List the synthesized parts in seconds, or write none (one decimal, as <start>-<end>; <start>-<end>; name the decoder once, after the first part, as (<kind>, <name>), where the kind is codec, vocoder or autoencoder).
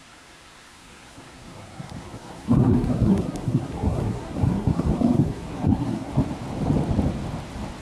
0.0-6.1 (codec, SNAC)